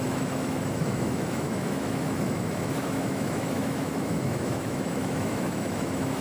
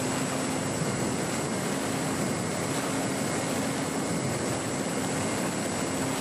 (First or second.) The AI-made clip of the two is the first